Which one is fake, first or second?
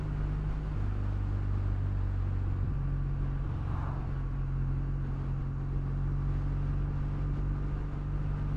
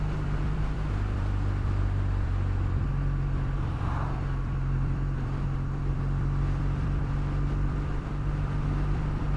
second